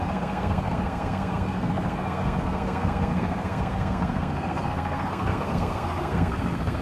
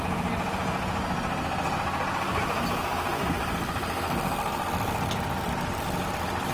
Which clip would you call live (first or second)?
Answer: second